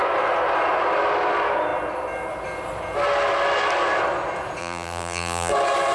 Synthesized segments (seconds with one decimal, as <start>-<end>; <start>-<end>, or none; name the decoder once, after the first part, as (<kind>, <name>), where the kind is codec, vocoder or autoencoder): 4.6-5.5 (vocoder, BigVGAN v2)